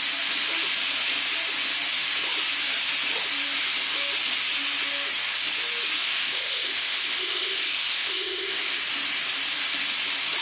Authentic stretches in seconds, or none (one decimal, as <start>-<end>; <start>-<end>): 0.0-6.0; 8.8-10.4